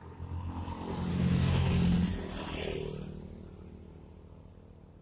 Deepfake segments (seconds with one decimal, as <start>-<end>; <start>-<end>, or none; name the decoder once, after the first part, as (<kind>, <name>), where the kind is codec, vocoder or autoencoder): 1.1-1.7 (autoencoder, DAC-VAE)